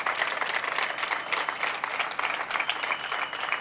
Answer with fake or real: real